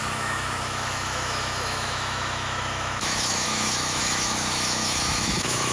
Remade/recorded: remade